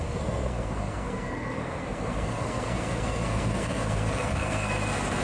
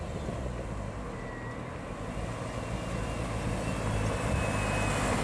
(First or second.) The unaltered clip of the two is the second